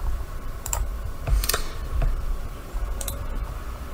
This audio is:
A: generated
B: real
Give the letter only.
A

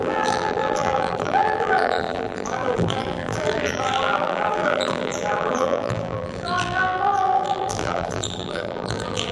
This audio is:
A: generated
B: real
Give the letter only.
A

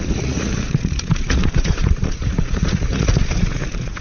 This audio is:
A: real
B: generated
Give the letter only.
B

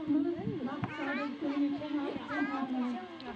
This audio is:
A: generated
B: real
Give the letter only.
B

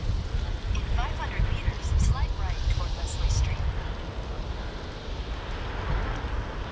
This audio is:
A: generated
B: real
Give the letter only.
B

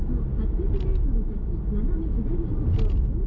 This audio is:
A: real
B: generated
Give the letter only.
A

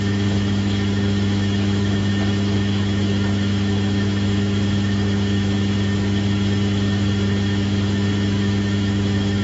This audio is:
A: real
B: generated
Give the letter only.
B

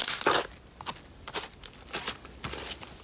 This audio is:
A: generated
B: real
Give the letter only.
A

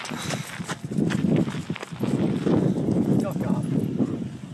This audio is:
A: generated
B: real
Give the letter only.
B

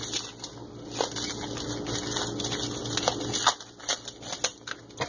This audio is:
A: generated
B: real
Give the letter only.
B